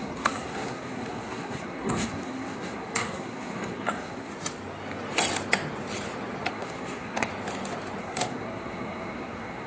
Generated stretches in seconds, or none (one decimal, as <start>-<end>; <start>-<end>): 0.0-4.3; 6.5-7.3; 8.0-9.7